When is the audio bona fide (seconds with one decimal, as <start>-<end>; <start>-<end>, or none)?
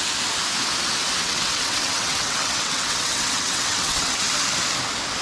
0.0-1.2; 4.3-5.2